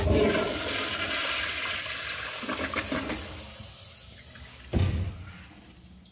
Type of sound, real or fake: real